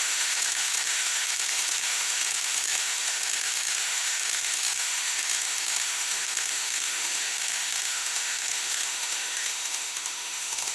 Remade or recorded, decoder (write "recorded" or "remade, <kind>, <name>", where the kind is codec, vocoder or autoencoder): remade, autoencoder, DAC-VAE